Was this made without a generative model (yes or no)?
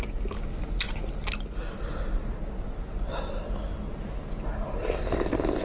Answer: yes